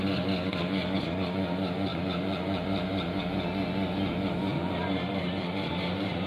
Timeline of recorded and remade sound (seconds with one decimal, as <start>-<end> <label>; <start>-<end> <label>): 0.0-1.9 recorded; 1.9-3.2 remade; 3.2-4.5 recorded; 4.5-6.3 remade